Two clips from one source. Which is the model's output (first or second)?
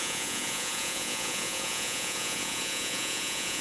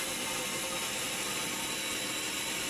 first